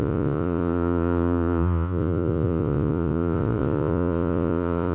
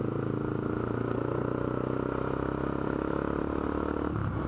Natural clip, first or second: second